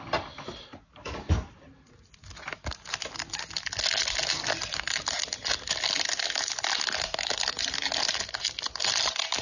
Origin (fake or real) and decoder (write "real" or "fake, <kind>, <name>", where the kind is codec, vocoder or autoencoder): real